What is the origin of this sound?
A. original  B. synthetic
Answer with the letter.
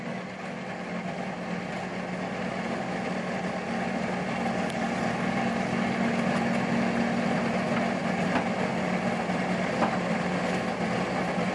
A